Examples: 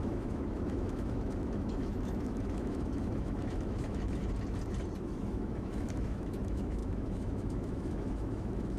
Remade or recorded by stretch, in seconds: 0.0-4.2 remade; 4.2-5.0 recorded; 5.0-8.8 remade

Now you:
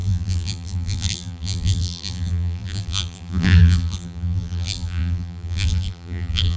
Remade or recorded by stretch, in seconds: 0.0-6.6 remade

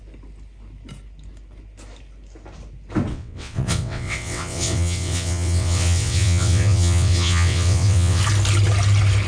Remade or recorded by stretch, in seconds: 0.0-3.1 recorded; 3.1-8.2 remade; 8.2-9.3 recorded

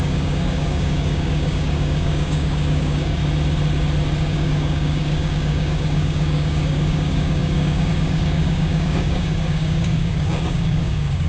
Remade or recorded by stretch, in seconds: 0.0-3.2 remade; 3.2-4.2 recorded; 4.2-11.3 remade

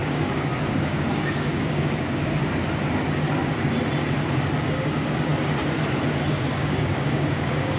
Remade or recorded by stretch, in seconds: 0.0-2.4 remade; 2.4-4.6 recorded; 4.6-5.3 remade; 5.3-6.3 recorded; 6.3-7.8 remade

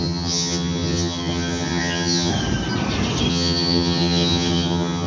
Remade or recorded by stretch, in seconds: 0.0-2.3 remade; 2.3-3.3 recorded; 3.3-5.1 remade

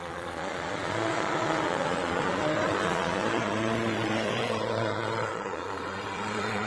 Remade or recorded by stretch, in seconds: 0.0-6.7 remade